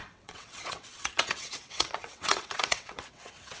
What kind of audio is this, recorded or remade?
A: remade